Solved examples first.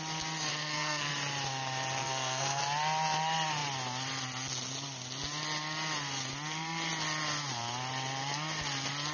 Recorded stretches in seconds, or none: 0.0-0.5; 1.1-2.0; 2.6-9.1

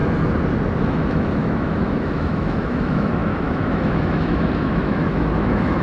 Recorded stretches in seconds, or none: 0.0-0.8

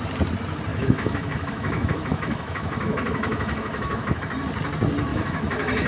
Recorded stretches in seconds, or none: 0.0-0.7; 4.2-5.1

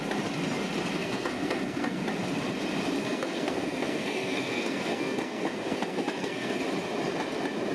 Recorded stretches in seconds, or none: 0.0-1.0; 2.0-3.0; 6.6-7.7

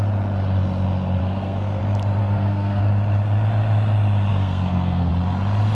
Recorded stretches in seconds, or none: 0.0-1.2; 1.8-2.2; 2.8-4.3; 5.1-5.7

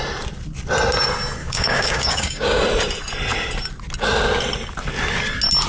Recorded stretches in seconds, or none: 0.0-1.4; 2.6-5.7

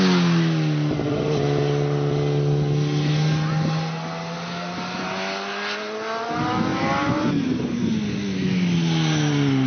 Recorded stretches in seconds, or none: 0.0-9.7

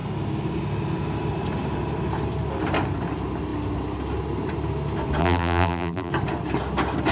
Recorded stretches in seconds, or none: 0.0-5.2; 6.1-7.1